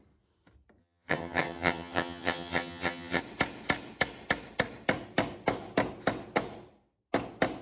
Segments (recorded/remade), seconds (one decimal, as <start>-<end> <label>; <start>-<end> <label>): 0.0-0.8 recorded; 0.8-3.2 remade; 3.2-7.6 recorded